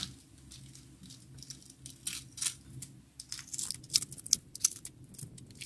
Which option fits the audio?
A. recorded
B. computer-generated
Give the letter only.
A